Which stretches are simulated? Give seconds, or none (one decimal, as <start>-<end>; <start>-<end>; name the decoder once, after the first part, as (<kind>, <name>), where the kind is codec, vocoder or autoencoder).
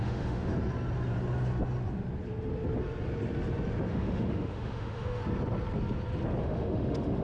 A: 0.0-0.5 (autoencoder, DAC-VAE); 3.9-5.2; 6.4-7.2